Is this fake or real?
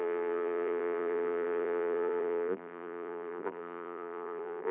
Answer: fake